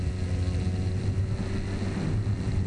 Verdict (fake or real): real